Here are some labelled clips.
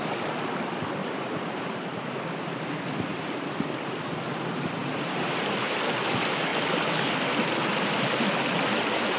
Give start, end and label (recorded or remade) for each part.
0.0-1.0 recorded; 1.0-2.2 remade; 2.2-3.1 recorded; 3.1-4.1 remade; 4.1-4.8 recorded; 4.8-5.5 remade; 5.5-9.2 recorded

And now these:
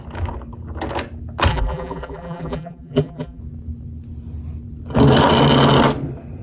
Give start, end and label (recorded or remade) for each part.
0.0-1.5 recorded; 1.5-3.4 remade; 3.4-6.4 recorded

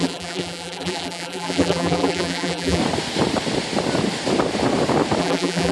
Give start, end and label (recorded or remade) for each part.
0.0-2.8 remade; 2.8-5.2 recorded; 5.2-5.7 remade

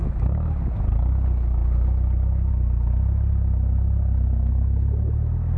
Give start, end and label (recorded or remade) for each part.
0.0-5.6 recorded

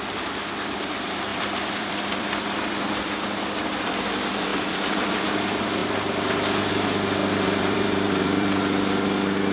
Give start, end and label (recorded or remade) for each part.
0.0-1.3 recorded; 1.3-2.8 remade; 2.8-4.5 recorded; 4.5-5.2 remade; 5.2-7.2 recorded; 7.2-8.6 remade; 8.6-9.5 recorded

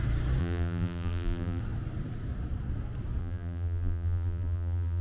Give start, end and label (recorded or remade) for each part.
0.0-0.4 recorded; 0.4-1.6 remade; 1.6-3.2 recorded; 3.2-5.0 remade